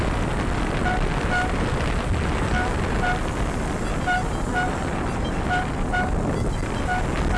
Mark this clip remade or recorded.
recorded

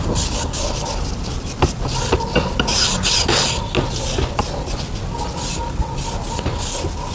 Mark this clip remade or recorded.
recorded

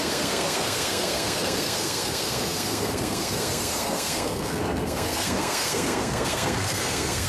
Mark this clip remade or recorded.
remade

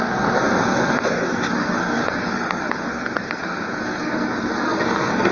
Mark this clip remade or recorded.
remade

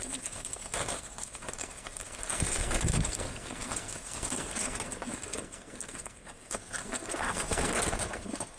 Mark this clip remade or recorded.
remade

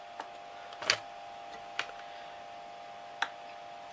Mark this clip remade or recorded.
recorded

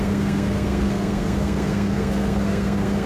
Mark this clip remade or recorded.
remade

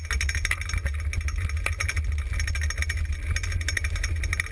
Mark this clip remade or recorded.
recorded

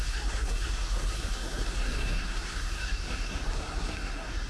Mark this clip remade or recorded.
remade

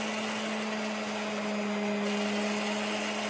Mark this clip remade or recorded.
recorded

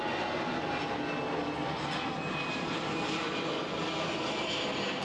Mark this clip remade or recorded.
recorded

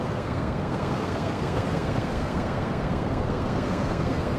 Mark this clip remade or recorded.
remade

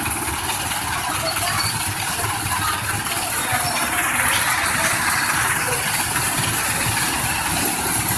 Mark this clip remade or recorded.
recorded